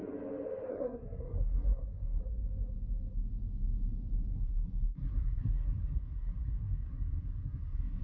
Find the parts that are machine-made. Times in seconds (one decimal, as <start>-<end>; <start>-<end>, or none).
0.7-2.2; 4.3-8.0